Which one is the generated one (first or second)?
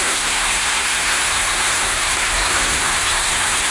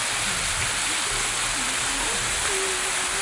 first